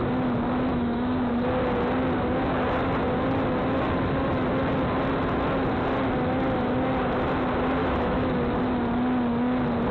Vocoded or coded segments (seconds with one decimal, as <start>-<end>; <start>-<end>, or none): 0.7-1.3; 7.8-8.4